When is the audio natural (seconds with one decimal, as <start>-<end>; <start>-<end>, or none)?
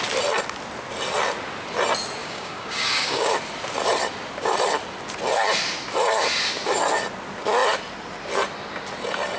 0.0-2.2; 3.3-9.4